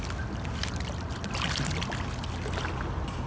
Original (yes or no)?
yes